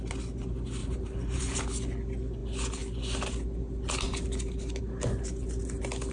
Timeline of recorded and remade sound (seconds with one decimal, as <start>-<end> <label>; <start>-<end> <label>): 0.0-0.8 recorded; 0.8-1.6 remade; 1.6-6.1 recorded